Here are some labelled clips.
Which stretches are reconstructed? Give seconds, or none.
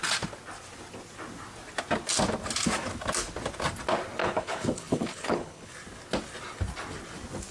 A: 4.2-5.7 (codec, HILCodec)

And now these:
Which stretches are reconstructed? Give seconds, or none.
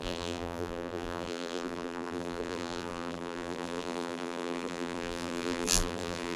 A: 0.0-6.4 (vocoder, BigVGAN v2)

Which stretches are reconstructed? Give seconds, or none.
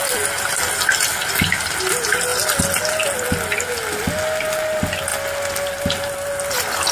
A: none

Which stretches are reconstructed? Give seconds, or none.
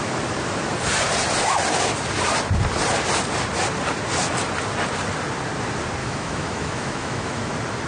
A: 6.0-7.5 (autoencoder, DAC-VAE)